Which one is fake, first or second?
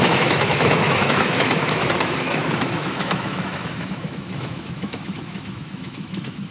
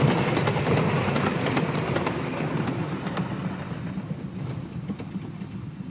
first